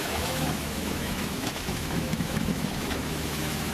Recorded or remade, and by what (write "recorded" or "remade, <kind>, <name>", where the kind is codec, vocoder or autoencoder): remade, autoencoder, DAC-VAE